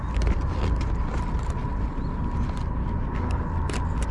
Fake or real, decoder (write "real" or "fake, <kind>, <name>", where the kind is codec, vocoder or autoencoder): real